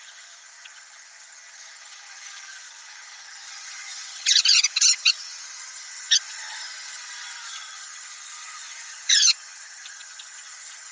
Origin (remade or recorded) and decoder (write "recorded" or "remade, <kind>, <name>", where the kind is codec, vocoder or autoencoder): remade, vocoder, HiFi-GAN